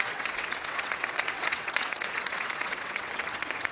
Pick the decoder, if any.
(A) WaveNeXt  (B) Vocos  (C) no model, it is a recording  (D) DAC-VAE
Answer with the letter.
A